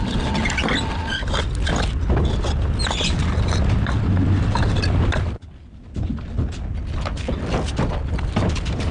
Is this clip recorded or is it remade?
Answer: recorded